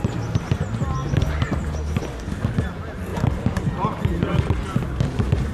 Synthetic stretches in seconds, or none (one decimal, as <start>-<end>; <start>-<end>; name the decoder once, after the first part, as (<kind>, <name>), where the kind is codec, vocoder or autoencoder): 3.1-3.7 (vocoder, BigVGAN v2)